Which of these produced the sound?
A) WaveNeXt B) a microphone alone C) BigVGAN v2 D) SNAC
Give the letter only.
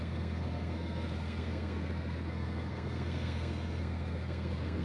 D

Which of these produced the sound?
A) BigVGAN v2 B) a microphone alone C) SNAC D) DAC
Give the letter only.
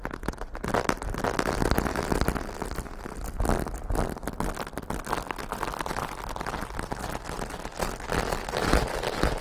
B